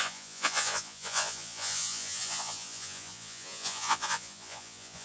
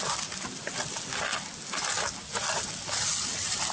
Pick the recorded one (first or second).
second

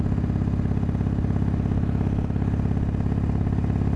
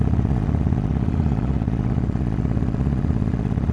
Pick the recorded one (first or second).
first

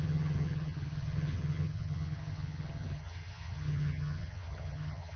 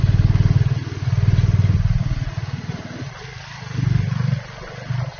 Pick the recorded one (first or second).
second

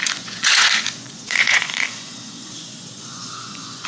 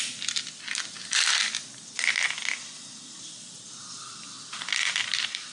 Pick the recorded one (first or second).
second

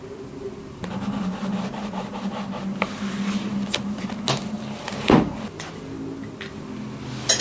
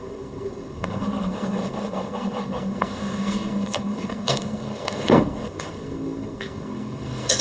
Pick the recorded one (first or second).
first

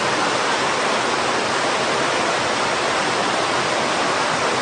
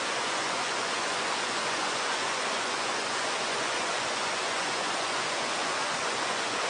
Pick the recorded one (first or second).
first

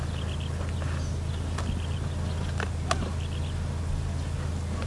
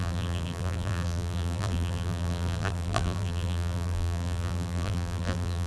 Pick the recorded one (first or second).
first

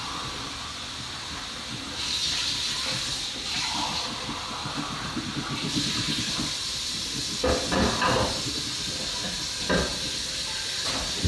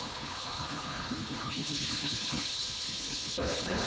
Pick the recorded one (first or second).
first